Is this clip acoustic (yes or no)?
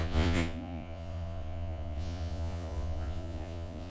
no